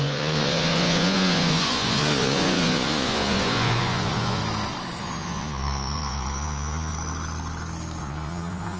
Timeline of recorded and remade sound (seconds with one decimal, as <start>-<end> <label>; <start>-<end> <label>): 0.0-4.4 remade; 4.4-5.0 recorded; 5.0-6.9 remade; 6.9-8.0 recorded; 8.0-8.8 remade